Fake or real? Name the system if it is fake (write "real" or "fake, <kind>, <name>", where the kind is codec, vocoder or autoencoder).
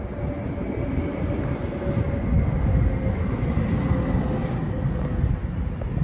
real